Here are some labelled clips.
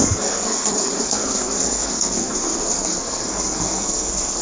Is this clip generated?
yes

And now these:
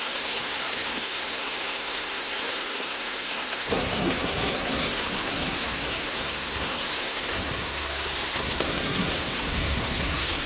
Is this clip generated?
yes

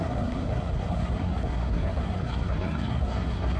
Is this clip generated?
yes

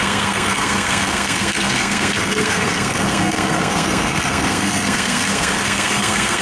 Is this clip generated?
yes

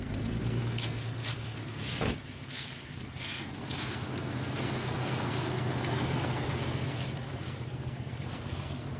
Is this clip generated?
yes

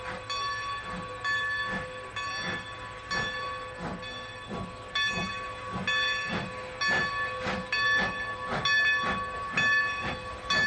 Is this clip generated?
no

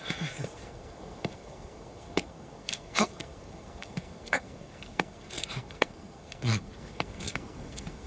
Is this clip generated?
yes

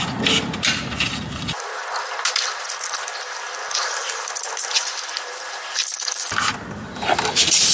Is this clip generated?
no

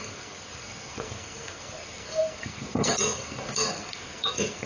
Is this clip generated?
yes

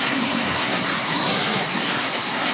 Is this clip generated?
yes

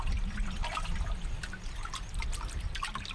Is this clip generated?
no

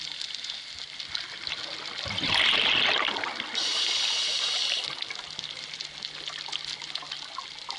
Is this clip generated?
no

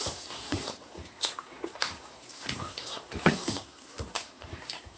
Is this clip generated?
yes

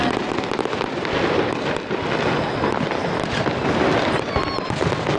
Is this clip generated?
no